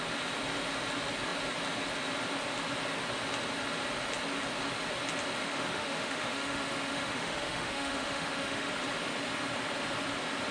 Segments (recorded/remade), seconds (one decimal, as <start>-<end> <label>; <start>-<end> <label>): 0.0-5.4 recorded; 5.4-8.7 remade; 8.7-10.5 recorded